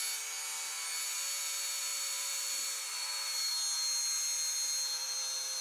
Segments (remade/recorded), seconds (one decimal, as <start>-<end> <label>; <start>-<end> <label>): 0.0-1.9 recorded; 1.9-3.5 remade; 3.5-5.6 recorded